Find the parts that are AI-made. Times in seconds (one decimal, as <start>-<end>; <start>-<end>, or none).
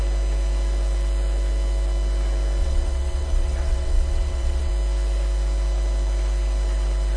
2.6-4.7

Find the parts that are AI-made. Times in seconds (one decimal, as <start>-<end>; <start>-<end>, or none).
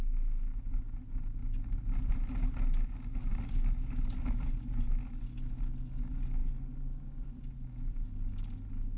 none